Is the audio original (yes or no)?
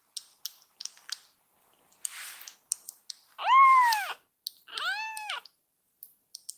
yes